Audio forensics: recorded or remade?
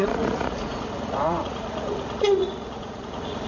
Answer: remade